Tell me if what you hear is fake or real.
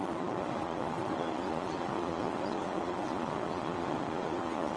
fake